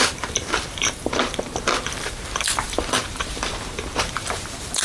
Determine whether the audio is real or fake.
fake